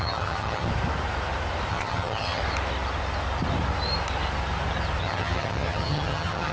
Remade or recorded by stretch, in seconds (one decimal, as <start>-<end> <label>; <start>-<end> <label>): 0.0-0.7 remade; 0.7-1.7 recorded; 1.7-2.4 remade; 2.4-5.0 recorded; 5.0-6.5 remade